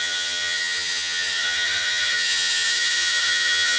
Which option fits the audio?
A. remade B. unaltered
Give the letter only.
A